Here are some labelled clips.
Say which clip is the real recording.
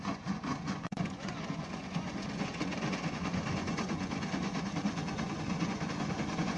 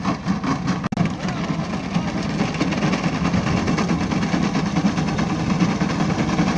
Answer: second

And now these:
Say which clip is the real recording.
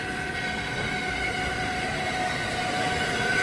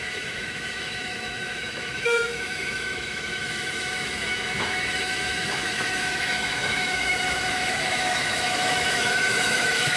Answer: first